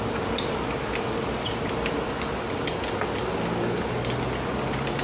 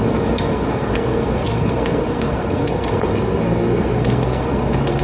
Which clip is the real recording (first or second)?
first